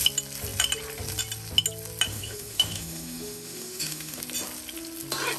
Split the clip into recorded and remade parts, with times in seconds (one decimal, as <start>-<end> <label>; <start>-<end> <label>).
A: 0.0-2.1 recorded; 2.1-4.2 remade; 4.2-5.4 recorded